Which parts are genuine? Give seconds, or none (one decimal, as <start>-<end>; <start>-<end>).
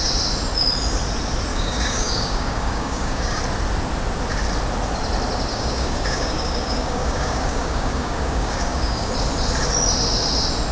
0.0-1.5; 3.4-5.5; 9.1-10.7